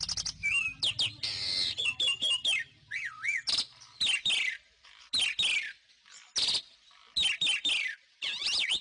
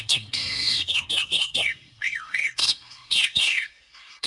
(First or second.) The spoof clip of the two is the second